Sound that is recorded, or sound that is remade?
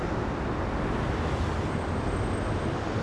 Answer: recorded